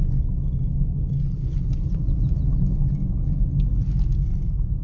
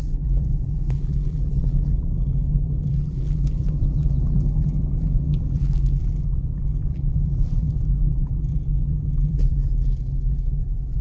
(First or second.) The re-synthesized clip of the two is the second